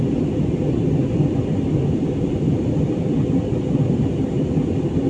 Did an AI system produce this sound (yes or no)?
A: no